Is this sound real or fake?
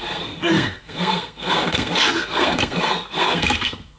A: fake